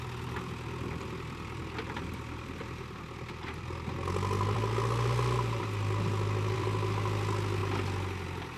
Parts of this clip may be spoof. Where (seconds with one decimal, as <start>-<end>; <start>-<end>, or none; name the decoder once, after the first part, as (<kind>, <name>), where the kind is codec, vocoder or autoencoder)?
0.0-8.6 (vocoder, BigVGAN v2)